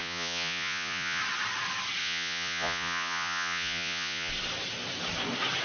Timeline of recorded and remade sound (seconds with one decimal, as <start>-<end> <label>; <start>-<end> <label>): 0.0-1.2 remade; 1.2-2.0 recorded; 2.0-4.3 remade; 4.3-5.6 recorded